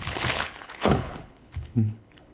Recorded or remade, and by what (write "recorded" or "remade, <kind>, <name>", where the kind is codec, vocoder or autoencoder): remade, codec, HILCodec